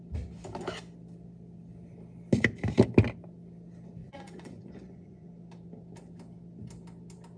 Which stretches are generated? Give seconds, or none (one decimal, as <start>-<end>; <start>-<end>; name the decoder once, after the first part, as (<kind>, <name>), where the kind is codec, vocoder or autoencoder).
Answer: 4.0-5.3 (vocoder, Vocos)